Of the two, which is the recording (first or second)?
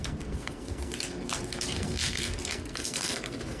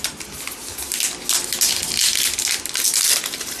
second